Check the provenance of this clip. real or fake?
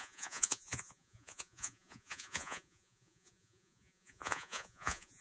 fake